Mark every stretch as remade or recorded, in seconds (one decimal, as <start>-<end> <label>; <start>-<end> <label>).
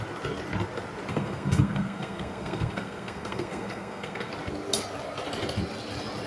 0.0-1.1 recorded; 1.1-4.3 remade; 4.3-6.3 recorded